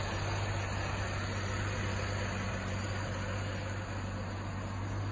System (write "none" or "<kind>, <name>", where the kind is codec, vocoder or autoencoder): none